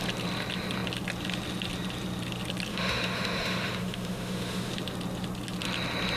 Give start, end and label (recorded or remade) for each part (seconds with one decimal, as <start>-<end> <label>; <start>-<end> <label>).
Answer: 0.0-2.7 recorded; 2.7-4.7 remade; 4.7-6.2 recorded